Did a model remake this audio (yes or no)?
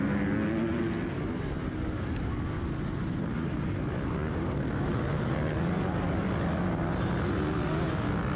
no